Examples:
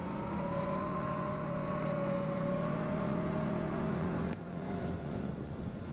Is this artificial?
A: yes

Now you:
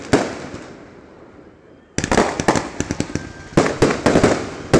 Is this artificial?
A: no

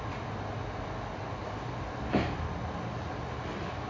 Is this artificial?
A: no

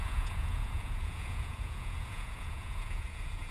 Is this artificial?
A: yes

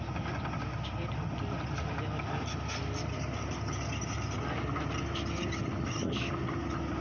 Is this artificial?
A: no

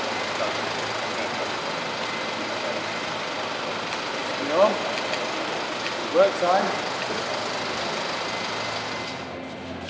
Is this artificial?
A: no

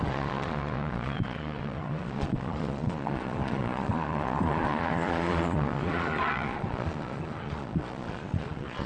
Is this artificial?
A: yes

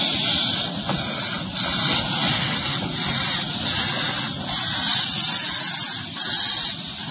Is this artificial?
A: no